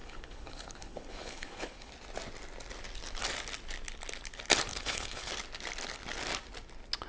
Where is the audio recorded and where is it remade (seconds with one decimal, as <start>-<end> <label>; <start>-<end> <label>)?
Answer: 0.0-1.9 remade; 1.9-4.7 recorded; 4.7-5.3 remade; 5.3-7.1 recorded

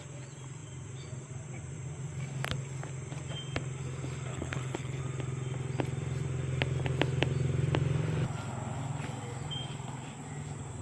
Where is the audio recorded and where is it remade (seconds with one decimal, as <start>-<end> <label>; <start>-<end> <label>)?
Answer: 0.0-4.3 recorded; 4.3-5.0 remade; 5.0-10.8 recorded

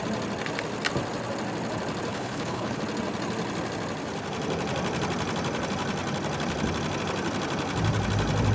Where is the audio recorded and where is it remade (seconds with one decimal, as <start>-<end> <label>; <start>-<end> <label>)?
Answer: 0.0-2.1 recorded; 2.1-2.8 remade; 2.8-8.5 recorded